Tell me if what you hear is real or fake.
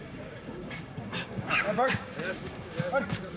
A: fake